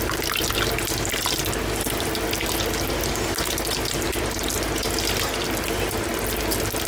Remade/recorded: recorded